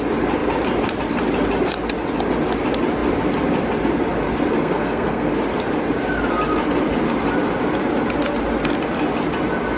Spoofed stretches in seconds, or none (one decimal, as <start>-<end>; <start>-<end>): 4.6-5.3